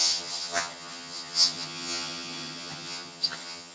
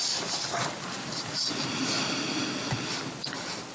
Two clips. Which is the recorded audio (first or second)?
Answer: second